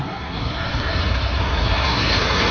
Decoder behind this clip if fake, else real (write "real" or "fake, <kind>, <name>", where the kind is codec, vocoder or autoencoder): fake, codec, SNAC